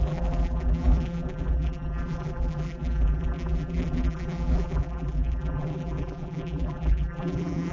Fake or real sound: fake